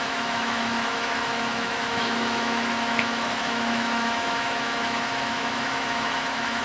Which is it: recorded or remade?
remade